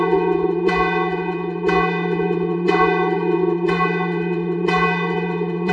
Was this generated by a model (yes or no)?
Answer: yes